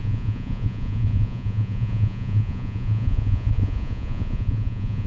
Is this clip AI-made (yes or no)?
yes